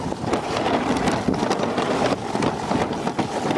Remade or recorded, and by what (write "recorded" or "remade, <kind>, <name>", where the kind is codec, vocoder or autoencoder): recorded